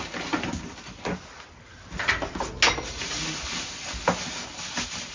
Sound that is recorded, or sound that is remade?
recorded